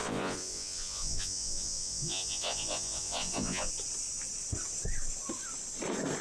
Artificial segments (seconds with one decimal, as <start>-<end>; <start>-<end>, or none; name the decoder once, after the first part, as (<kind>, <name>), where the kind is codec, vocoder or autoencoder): 0.0-3.7 (vocoder, Vocos)